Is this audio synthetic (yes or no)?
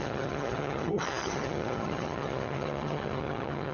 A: yes